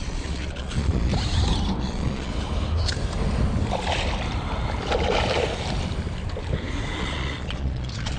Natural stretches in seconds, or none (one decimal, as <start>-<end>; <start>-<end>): 1.1-1.8; 2.3-7.0